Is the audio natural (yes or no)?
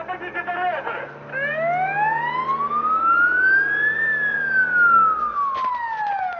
yes